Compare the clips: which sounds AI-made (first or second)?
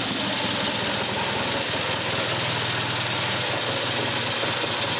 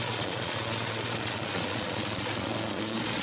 second